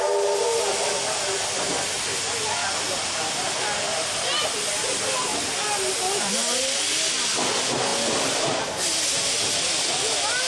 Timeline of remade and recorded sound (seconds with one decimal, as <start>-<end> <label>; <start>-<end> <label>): 0.0-10.5 recorded